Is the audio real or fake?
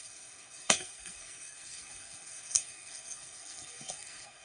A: fake